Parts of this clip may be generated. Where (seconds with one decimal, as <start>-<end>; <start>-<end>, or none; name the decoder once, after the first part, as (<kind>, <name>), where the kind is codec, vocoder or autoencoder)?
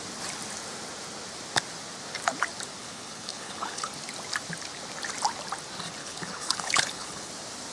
2.8-3.9 (codec, HILCodec); 6.0-7.3